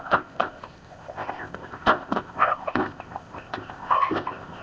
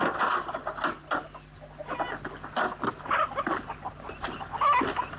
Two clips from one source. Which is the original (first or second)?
second